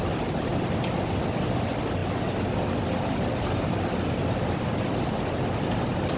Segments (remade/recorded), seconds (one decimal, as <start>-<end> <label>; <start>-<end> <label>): 0.0-6.2 recorded